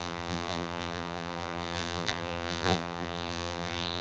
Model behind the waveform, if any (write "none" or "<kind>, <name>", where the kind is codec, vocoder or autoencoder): vocoder, BigVGAN v2